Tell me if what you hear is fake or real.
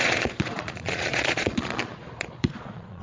fake